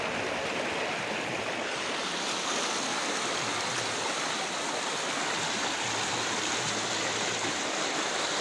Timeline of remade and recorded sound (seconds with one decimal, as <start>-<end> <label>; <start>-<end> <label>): 0.0-2.9 remade; 2.9-7.8 recorded; 7.8-8.4 remade